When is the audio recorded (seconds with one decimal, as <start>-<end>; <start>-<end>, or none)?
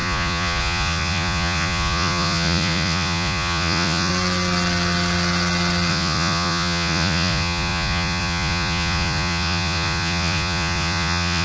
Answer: 4.1-5.9